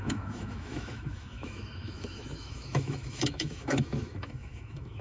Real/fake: fake